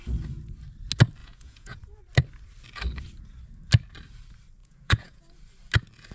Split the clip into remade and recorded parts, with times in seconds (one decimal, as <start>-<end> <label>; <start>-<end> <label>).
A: 0.0-1.2 recorded; 1.2-2.0 remade; 2.0-4.6 recorded; 4.6-5.2 remade; 5.2-6.1 recorded